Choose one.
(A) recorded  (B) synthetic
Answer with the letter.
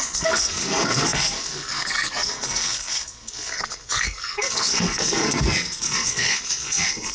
B